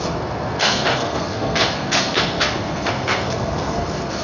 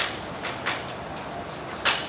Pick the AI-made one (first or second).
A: first